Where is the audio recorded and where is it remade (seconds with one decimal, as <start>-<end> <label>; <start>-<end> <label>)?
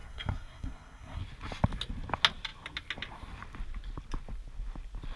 0.0-1.2 remade; 1.2-5.2 recorded